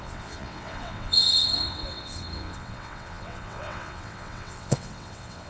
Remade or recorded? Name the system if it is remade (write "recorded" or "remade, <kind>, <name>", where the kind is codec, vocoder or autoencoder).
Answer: remade, vocoder, WaveNeXt